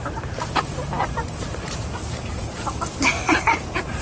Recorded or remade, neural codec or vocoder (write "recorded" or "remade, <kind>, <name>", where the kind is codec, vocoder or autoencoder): remade, vocoder, BigVGAN v2